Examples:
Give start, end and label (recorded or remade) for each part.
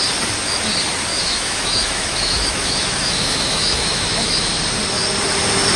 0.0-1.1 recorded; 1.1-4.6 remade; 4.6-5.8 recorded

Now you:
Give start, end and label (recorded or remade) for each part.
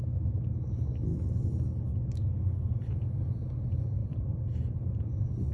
0.0-1.1 recorded; 1.1-1.6 remade; 1.6-4.0 recorded; 4.0-5.5 remade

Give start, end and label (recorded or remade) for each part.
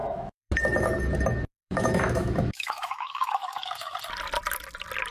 0.0-0.5 remade; 0.5-1.5 recorded; 1.5-4.0 remade; 4.0-5.1 recorded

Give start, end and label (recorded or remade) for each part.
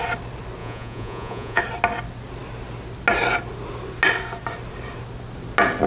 0.0-0.6 recorded; 0.6-1.6 remade; 1.6-5.9 recorded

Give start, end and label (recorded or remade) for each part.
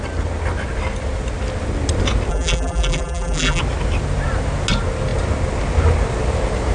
0.0-2.3 recorded; 2.3-3.6 remade; 3.6-6.7 recorded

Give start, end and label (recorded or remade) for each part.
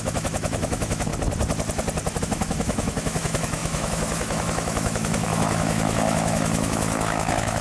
0.0-1.1 remade; 1.1-2.2 recorded; 2.2-7.6 remade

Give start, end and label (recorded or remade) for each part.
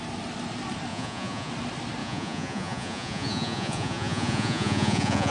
0.0-0.9 recorded; 0.9-1.5 remade; 1.5-2.0 recorded; 2.0-5.3 remade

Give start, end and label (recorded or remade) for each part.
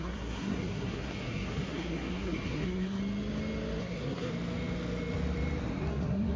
0.0-3.0 remade; 3.0-3.8 recorded; 3.8-4.3 remade; 4.3-5.9 recorded; 5.9-6.4 remade